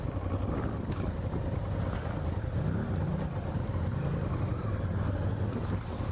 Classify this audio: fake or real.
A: real